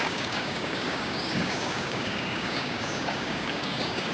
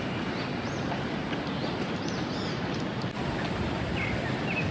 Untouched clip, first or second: second